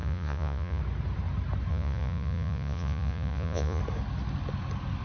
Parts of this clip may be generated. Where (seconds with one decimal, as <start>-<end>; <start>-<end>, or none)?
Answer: 0.0-0.8; 1.7-3.8